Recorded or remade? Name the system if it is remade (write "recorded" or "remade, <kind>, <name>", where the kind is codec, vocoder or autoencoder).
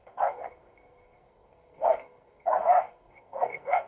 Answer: remade, codec, SNAC